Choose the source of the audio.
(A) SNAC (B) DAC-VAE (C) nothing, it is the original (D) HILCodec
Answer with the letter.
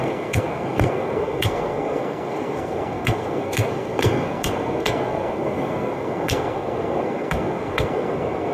A